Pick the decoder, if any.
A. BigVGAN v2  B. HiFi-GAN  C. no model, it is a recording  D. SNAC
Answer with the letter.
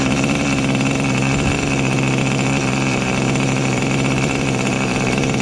A